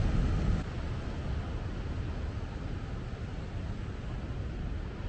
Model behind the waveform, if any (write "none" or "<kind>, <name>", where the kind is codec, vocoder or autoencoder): none